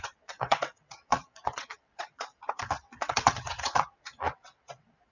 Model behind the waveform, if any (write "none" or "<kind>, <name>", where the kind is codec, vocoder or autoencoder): vocoder, WaveNeXt